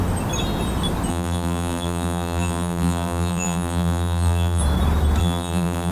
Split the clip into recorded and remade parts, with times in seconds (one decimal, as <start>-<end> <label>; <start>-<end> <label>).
0.0-1.1 recorded; 1.1-4.6 remade; 4.6-5.2 recorded; 5.2-5.9 remade